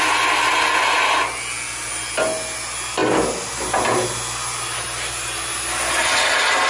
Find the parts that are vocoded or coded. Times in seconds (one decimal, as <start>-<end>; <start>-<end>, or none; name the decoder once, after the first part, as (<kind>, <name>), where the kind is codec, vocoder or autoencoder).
none